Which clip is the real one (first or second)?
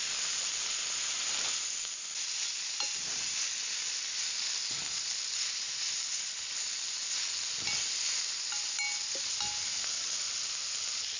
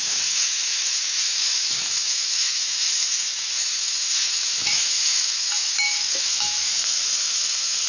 first